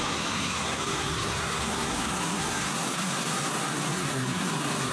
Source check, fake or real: fake